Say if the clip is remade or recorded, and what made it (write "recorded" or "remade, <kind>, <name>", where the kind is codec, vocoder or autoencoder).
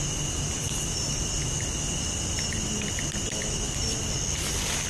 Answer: recorded